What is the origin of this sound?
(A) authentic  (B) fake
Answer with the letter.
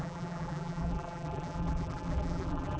B